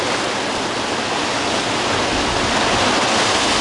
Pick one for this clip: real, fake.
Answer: real